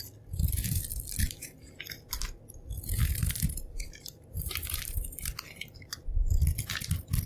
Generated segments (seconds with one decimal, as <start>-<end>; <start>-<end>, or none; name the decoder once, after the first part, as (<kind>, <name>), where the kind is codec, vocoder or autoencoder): 1.2-1.8 (vocoder, BigVGAN v2); 3.2-6.0